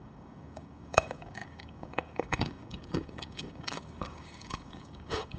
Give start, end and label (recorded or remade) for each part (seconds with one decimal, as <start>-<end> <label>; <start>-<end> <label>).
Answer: 0.0-5.4 remade